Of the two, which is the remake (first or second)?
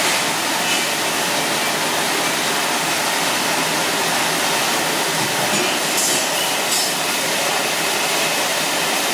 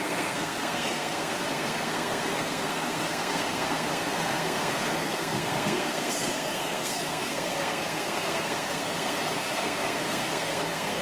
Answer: second